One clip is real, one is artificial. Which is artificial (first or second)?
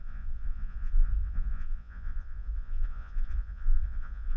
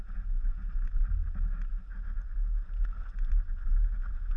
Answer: first